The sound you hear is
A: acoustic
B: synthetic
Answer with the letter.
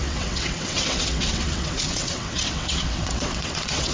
B